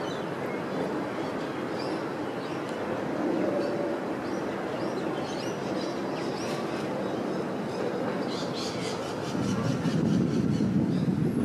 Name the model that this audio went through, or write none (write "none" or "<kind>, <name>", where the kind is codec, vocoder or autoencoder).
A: none